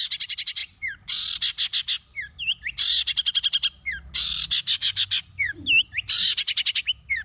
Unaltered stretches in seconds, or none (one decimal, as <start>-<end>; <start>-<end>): 0.0-7.2

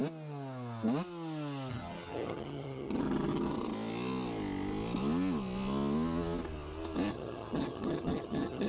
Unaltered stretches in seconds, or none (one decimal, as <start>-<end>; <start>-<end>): 0.0-1.7; 3.6-7.1

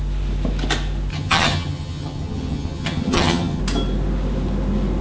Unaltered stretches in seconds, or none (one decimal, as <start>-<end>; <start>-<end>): 0.0-1.1; 3.6-5.0

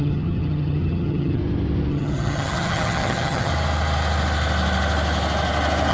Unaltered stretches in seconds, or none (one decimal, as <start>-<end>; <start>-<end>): 1.4-1.9; 3.5-5.9

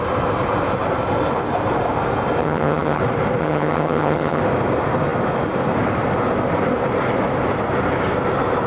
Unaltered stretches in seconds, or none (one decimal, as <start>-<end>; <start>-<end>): 0.0-2.4; 3.0-3.4; 4.4-8.7

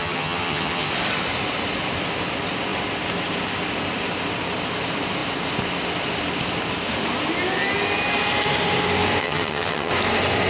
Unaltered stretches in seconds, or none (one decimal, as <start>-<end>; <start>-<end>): 0.9-9.2; 9.9-10.5

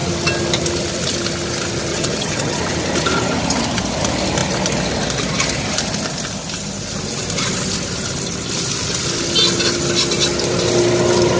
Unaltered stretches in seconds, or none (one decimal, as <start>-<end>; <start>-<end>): 0.0-1.9; 2.6-11.4

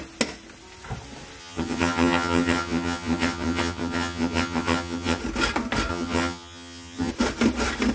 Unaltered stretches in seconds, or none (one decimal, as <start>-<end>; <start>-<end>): 0.0-1.4; 5.2-5.9; 7.1-7.9